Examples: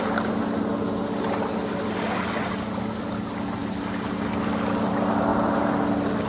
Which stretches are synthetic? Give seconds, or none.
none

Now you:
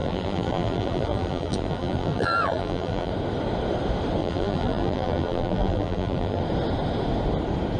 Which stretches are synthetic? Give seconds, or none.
0.0-3.1 (vocoder, BigVGAN v2); 4.2-6.4

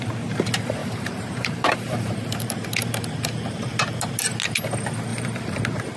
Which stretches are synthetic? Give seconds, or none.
0.8-2.5 (vocoder, BigVGAN v2); 5.1-5.6

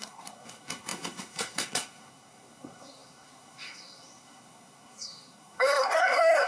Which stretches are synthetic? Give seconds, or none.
0.0-6.5 (codec, SNAC)

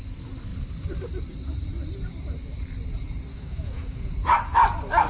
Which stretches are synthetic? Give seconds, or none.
3.3-4.1 (autoencoder, DAC-VAE)

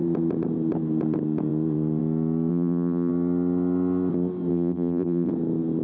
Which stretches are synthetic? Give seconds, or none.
2.5-3.1 (vocoder, BigVGAN v2); 4.5-5.3

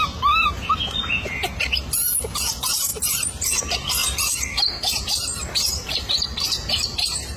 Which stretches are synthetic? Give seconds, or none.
4.0-7.4 (vocoder, BigVGAN v2)